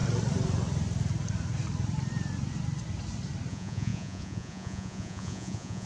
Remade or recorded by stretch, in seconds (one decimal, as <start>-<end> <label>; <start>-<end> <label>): 0.0-3.5 recorded; 3.5-5.9 remade

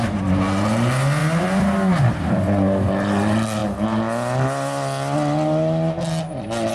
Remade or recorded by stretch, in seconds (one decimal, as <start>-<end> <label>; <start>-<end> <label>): 0.0-1.2 recorded; 1.2-2.3 remade; 2.3-6.7 recorded

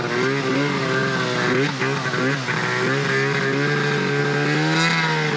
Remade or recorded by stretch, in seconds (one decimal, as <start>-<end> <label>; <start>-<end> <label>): 0.0-5.4 recorded

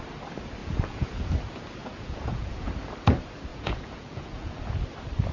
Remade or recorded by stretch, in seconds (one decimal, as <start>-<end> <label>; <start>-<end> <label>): 0.0-0.6 recorded; 0.6-1.3 remade; 1.3-1.8 recorded; 1.8-2.7 remade; 2.7-3.5 recorded; 3.5-4.6 remade; 4.6-5.3 recorded

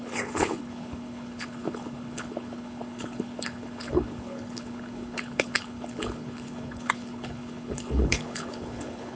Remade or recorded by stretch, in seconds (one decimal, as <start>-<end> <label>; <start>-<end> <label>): 0.0-9.2 remade

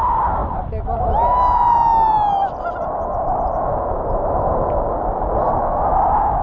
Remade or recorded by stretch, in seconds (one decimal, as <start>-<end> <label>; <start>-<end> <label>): 0.0-6.4 recorded